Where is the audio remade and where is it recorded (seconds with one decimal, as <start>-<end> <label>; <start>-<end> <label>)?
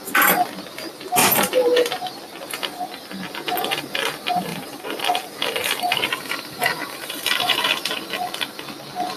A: 0.0-1.2 recorded; 1.2-2.1 remade; 2.1-4.5 recorded; 4.5-5.0 remade; 5.0-5.6 recorded; 5.6-8.0 remade; 8.0-9.2 recorded